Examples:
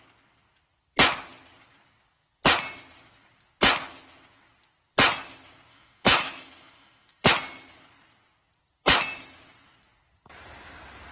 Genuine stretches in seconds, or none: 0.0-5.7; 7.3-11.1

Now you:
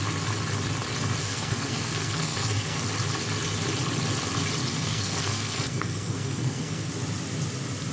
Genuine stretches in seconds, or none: 0.0-1.2; 2.8-4.7; 6.9-7.9